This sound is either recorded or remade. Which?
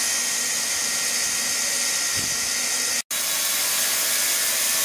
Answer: recorded